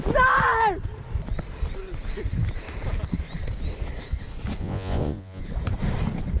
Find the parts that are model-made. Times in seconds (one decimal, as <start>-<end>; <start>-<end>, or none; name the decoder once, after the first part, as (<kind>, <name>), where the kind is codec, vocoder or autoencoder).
4.6-5.4 (vocoder, Vocos)